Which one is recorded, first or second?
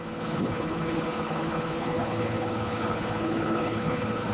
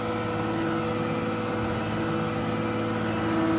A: second